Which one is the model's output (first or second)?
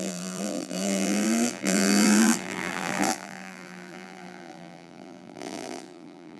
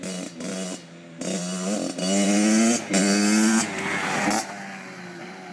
first